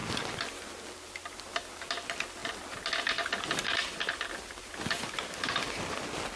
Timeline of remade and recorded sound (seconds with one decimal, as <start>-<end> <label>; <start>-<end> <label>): 0.0-6.4 recorded

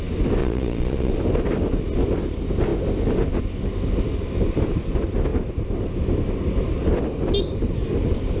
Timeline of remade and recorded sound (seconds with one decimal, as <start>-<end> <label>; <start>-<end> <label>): 0.0-0.4 recorded; 0.4-1.1 remade; 1.1-8.4 recorded

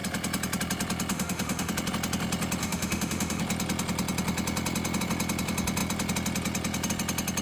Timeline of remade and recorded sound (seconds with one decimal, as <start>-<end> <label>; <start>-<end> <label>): 0.0-1.1 recorded; 1.1-1.7 remade; 1.7-2.6 recorded; 2.6-3.4 remade; 3.4-7.4 recorded

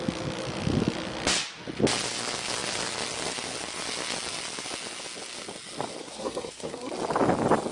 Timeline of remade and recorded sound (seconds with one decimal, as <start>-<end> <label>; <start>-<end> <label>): 0.0-6.0 recorded; 6.0-6.9 remade; 6.9-7.7 recorded

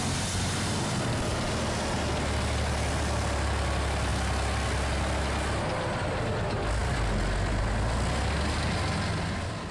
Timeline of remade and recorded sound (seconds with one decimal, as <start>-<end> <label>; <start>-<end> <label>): 0.0-9.7 recorded

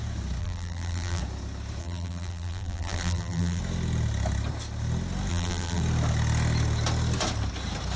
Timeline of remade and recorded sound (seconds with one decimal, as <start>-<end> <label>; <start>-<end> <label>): 0.0-0.4 recorded; 0.4-1.2 remade; 1.2-1.8 recorded; 1.8-3.6 remade; 3.6-5.3 recorded; 5.3-5.8 remade; 5.8-8.0 recorded

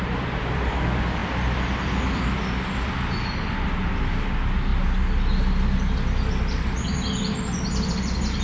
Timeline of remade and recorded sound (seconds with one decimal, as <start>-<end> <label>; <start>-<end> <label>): 0.0-8.4 recorded